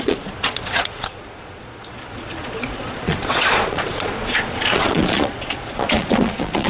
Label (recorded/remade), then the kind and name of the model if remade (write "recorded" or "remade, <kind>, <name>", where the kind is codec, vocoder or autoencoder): remade, vocoder, Vocos